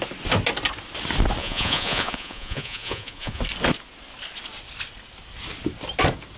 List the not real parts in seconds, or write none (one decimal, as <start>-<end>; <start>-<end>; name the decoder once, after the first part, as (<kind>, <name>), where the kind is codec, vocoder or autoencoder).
1.4-3.4 (vocoder, Vocos)